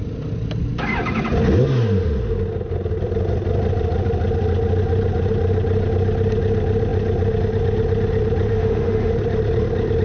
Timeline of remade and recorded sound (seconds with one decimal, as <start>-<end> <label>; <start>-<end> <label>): 0.0-8.5 recorded; 8.5-9.1 remade; 9.1-10.0 recorded